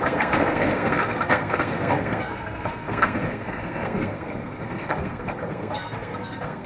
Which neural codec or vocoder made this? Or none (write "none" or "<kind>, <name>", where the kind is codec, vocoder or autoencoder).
codec, SNAC